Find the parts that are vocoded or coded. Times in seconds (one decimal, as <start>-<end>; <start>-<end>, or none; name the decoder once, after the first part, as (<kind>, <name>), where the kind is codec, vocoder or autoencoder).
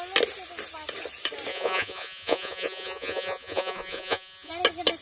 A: 1.5-4.5 (vocoder, Vocos)